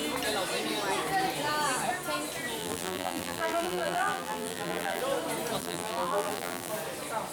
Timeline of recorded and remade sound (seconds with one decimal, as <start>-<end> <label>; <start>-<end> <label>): 0.0-2.6 recorded; 2.6-5.0 remade; 5.0-5.6 recorded; 5.6-6.7 remade; 6.7-7.3 recorded